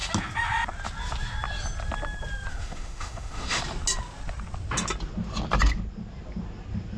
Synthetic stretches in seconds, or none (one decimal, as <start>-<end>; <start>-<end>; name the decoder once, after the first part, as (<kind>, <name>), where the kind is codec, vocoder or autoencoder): 2.5-3.6 (autoencoder, DAC-VAE)